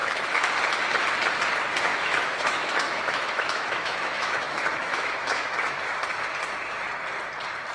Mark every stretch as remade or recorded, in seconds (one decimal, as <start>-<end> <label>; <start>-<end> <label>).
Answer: 0.0-0.5 remade; 0.5-1.9 recorded; 1.9-5.8 remade; 5.8-7.7 recorded